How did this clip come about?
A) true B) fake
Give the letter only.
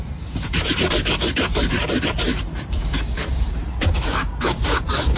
B